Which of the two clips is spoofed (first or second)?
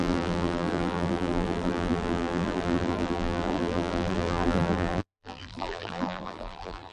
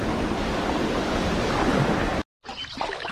first